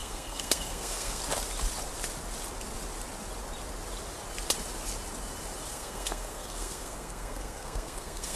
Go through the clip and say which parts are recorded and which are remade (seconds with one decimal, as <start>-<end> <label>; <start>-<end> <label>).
0.0-1.2 remade; 1.2-5.7 recorded; 5.7-8.4 remade